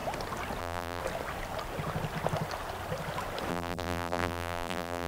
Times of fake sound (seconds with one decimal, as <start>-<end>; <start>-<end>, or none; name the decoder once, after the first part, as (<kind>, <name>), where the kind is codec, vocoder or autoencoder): 0.6-1.0 (vocoder, BigVGAN v2); 3.5-5.1

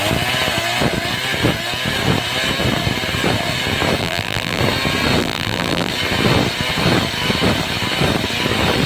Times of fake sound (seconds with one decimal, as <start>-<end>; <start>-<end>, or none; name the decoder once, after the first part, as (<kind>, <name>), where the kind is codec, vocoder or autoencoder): 4.0-4.6 (vocoder, BigVGAN v2); 5.2-5.9

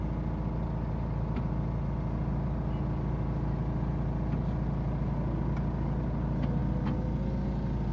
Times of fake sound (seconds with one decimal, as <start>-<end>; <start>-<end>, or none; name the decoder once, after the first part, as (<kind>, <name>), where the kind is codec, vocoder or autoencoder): none

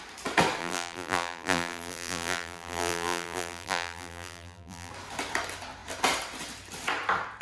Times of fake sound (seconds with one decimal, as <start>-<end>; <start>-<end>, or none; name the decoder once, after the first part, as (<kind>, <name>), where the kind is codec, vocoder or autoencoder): 0.6-4.9 (vocoder, BigVGAN v2)

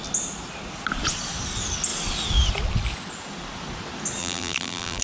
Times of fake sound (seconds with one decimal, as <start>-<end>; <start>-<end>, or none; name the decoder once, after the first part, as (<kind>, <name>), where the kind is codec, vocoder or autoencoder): 4.2-5.0 (vocoder, BigVGAN v2)